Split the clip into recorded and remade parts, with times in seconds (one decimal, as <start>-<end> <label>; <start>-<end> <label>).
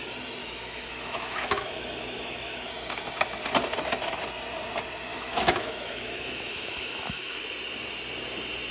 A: 0.0-0.4 recorded; 0.4-2.7 remade; 2.7-5.1 recorded; 5.1-7.4 remade; 7.4-8.7 recorded